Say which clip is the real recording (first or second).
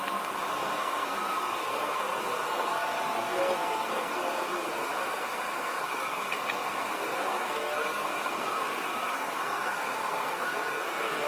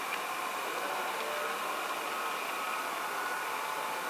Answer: second